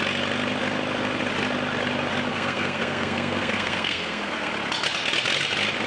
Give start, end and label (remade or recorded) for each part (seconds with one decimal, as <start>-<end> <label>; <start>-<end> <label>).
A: 0.0-2.3 recorded; 2.3-4.5 remade; 4.5-5.9 recorded